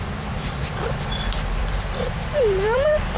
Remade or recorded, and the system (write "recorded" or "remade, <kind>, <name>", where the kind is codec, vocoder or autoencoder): remade, vocoder, BigVGAN v2